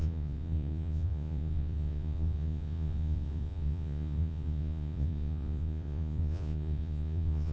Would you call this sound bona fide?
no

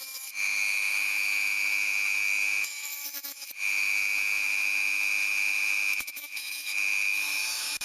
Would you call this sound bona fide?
no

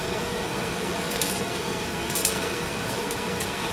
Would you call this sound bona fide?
no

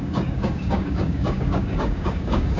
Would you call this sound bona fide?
no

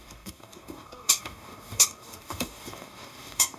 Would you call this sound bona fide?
no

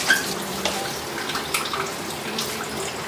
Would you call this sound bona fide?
no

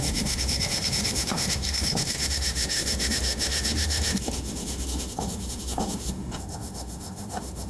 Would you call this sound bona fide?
no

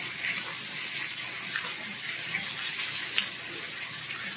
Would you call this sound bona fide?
yes